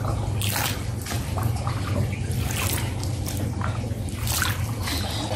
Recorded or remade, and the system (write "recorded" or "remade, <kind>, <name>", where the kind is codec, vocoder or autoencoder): recorded